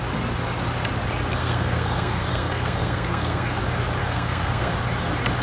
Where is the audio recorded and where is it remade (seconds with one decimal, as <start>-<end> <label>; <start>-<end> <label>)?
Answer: 0.0-1.4 recorded; 1.4-3.6 remade; 3.6-4.0 recorded; 4.0-4.7 remade; 4.7-5.4 recorded